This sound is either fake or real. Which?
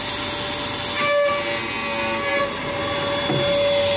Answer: real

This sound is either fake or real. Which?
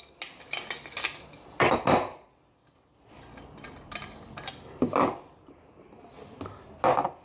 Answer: real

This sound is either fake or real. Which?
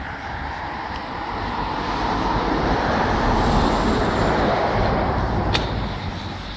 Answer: fake